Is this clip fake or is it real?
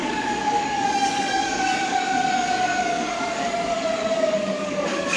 fake